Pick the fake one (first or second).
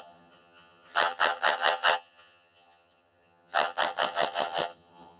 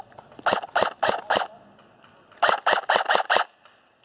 first